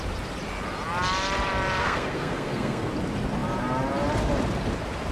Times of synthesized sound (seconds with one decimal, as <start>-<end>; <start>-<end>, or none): 1.8-2.9